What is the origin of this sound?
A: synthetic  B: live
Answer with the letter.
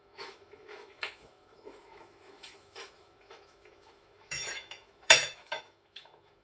A